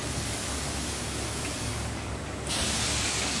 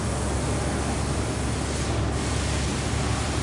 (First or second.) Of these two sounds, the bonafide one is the second